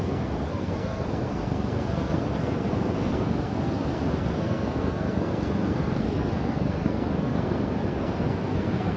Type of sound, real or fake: fake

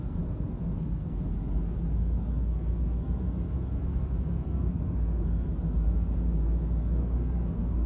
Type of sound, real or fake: fake